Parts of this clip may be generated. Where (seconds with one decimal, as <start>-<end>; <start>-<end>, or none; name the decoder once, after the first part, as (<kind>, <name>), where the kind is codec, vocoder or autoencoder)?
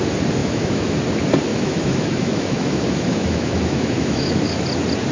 0.4-1.0 (autoencoder, DAC-VAE); 1.5-4.6